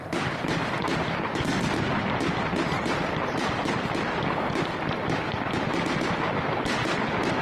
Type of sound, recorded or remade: recorded